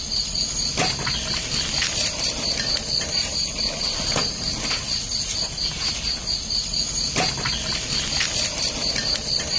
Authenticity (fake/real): real